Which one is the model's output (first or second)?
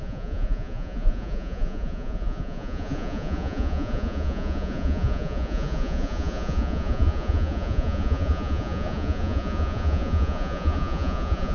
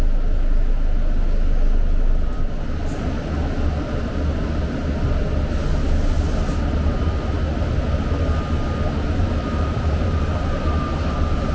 first